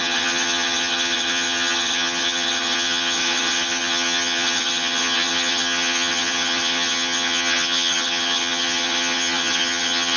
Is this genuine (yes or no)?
no